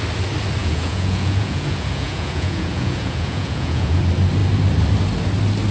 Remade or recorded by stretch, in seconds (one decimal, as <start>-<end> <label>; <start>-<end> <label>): 0.0-0.6 recorded; 0.6-4.0 remade; 4.0-5.7 recorded